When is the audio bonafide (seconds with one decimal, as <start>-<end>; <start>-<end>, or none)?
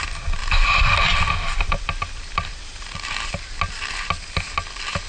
0.0-0.4; 3.5-5.1